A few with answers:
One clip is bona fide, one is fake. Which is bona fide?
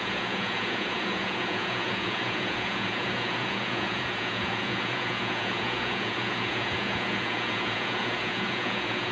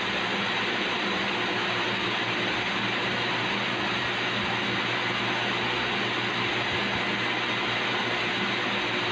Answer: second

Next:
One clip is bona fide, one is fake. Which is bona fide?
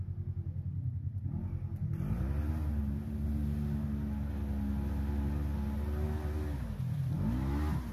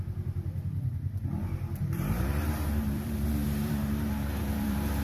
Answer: first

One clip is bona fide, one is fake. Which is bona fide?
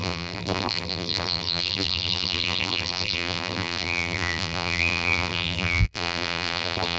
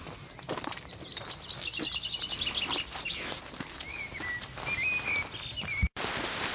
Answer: second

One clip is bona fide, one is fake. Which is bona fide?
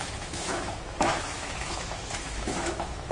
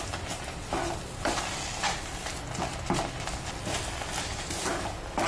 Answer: second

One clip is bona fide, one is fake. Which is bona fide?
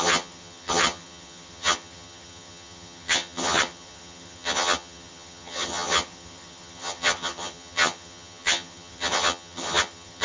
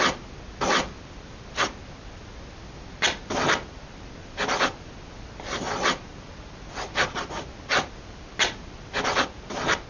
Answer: second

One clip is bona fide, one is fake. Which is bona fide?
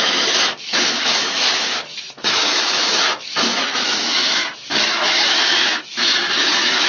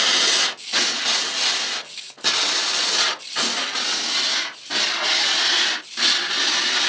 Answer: second